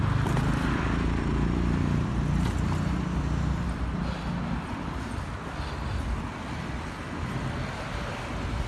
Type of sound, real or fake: real